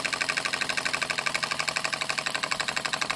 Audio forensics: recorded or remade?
recorded